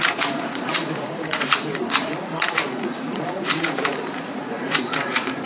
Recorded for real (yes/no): no